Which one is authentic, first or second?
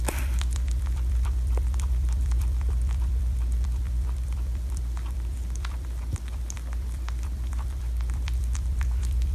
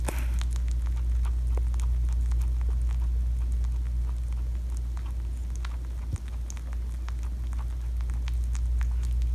second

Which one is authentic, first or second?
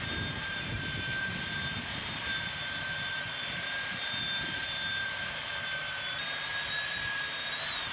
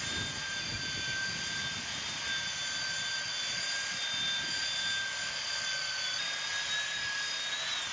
second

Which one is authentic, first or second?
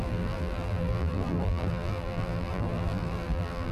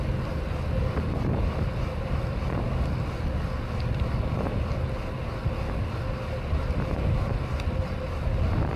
second